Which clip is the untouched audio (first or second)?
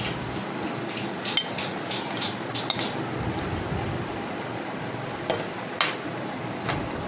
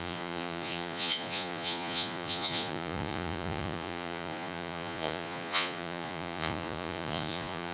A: first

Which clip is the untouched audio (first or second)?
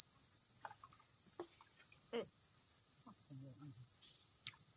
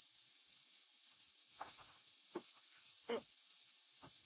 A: first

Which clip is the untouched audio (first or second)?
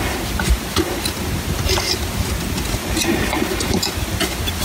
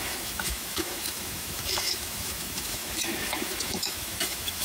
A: first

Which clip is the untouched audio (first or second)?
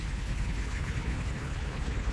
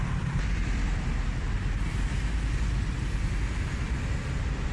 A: second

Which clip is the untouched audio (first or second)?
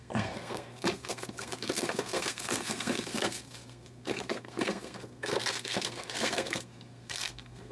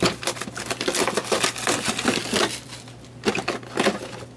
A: second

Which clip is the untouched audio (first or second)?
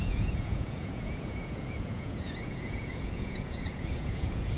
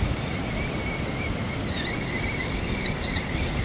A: second